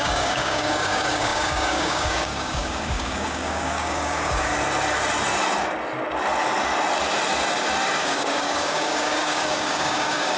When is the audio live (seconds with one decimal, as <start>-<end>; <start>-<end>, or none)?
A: 4.5-8.0